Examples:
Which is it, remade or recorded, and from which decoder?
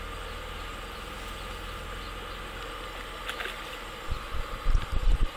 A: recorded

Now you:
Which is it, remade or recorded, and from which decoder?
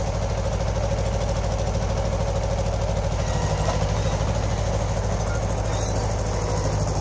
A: recorded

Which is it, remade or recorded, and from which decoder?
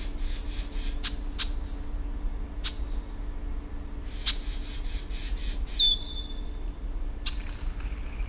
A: recorded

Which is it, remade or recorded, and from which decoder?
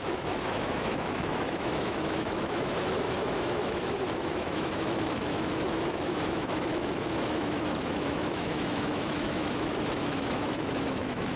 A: remade, autoencoder, DAC-VAE